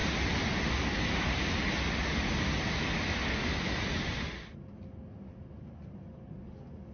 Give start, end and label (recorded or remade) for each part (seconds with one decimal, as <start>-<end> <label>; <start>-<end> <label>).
0.0-6.9 recorded